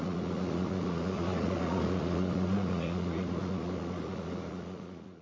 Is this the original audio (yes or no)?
no